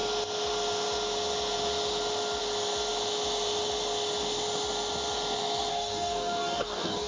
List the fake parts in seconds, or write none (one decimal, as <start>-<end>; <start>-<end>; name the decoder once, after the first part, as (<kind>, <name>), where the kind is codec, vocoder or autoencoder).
5.7-7.1 (codec, DAC)